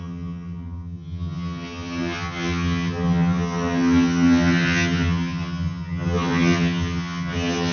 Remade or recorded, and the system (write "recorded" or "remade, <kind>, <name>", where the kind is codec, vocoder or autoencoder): remade, vocoder, HiFi-GAN